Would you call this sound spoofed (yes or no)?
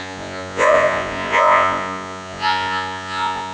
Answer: yes